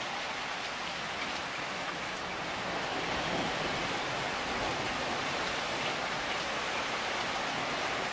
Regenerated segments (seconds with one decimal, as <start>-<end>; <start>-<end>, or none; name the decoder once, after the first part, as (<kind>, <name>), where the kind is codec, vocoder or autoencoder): 4.7-5.4 (vocoder, BigVGAN v2)